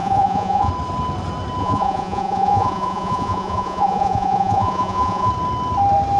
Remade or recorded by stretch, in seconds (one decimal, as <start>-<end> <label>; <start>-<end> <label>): 0.0-0.7 remade; 0.7-1.6 recorded; 1.6-5.3 remade; 5.3-6.2 recorded